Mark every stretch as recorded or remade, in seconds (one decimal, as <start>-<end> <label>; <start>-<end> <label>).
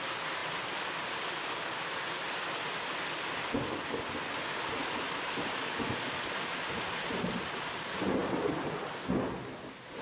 0.0-0.4 recorded; 0.4-3.1 remade; 3.1-4.8 recorded; 4.8-6.7 remade; 6.7-10.0 recorded